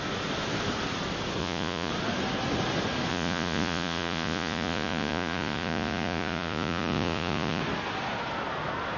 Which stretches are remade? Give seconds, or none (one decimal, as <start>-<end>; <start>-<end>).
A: 1.4-1.9; 3.1-7.6